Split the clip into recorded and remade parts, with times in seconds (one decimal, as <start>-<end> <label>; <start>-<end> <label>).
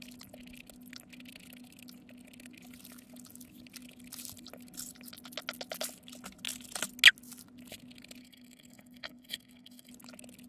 0.0-8.2 recorded; 8.2-9.9 remade; 9.9-10.5 recorded